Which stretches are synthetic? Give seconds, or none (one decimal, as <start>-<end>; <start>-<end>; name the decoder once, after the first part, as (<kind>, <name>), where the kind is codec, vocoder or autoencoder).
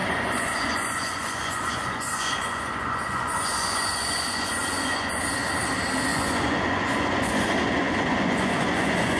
0.0-5.2 (vocoder, Vocos); 6.1-9.2